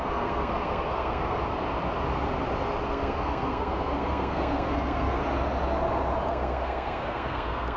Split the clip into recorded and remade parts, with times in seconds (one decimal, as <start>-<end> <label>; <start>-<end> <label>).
0.0-1.4 remade; 1.4-2.9 recorded; 2.9-5.2 remade; 5.2-6.3 recorded; 6.3-7.8 remade